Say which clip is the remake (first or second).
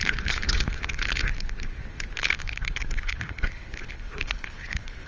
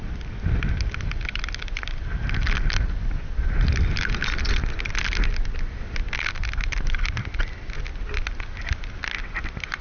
first